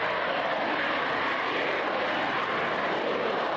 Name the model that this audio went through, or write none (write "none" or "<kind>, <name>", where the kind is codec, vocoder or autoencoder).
none